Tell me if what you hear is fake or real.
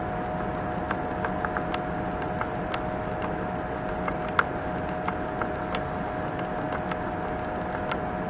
real